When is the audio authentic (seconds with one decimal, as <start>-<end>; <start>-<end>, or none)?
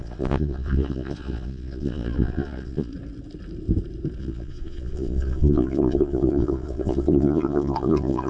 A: 2.9-4.2